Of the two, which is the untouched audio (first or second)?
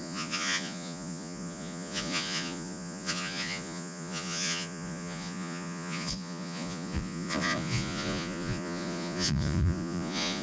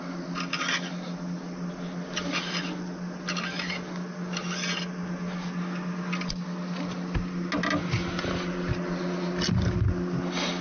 second